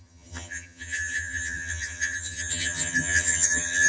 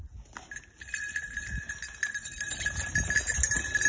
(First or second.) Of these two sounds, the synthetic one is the first